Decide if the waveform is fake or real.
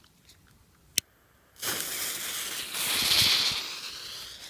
real